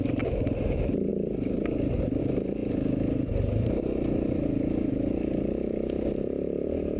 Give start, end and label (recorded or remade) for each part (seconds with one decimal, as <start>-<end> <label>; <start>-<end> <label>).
0.0-1.1 recorded; 1.1-2.2 remade; 2.2-7.0 recorded